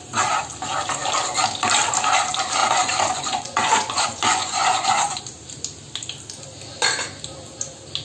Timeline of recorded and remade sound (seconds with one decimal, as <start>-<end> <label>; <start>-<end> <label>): 0.0-2.6 recorded; 2.6-5.2 remade; 5.2-8.0 recorded